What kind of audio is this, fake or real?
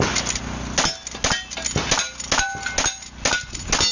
real